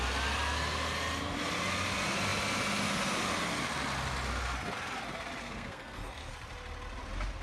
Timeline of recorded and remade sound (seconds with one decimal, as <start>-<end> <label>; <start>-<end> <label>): 0.0-5.4 recorded; 5.4-6.3 remade; 6.3-7.4 recorded